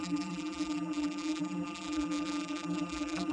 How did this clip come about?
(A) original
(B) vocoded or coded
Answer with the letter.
B